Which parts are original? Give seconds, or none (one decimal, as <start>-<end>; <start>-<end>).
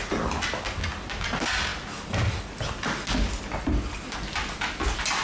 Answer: 0.0-5.2